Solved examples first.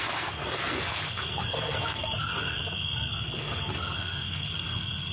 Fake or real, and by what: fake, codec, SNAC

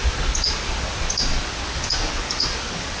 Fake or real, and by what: real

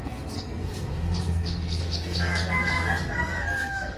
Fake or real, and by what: fake, codec, SNAC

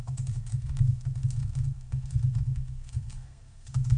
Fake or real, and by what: fake, codec, SNAC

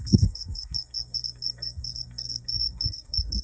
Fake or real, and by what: fake, codec, SNAC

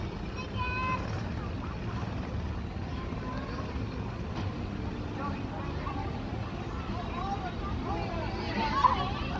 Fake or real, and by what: real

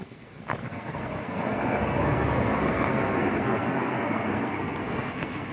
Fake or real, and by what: fake, codec, SNAC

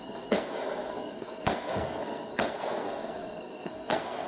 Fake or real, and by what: fake, codec, SNAC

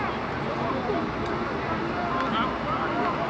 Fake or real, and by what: real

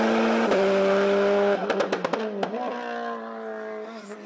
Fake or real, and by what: real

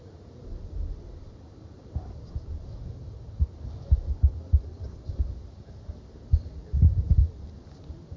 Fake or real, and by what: real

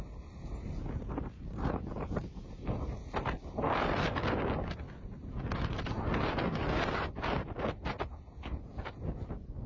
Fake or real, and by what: real